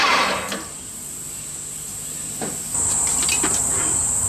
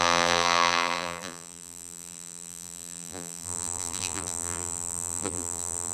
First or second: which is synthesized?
second